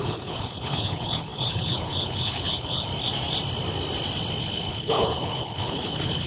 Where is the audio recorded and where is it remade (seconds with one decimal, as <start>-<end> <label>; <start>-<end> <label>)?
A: 0.0-2.9 remade; 2.9-4.4 recorded; 4.4-6.3 remade